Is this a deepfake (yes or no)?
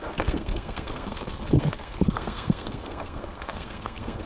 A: yes